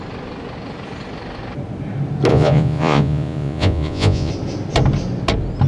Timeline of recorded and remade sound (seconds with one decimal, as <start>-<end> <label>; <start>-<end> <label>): 0.0-2.3 recorded; 2.3-4.3 remade; 4.3-5.7 recorded